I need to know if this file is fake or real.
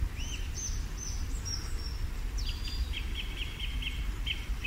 fake